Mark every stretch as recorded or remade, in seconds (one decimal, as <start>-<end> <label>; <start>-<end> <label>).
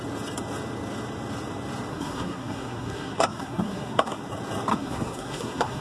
0.0-1.9 recorded; 1.9-4.2 remade; 4.2-4.7 recorded; 4.7-5.8 remade